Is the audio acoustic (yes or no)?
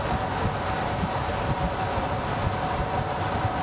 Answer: yes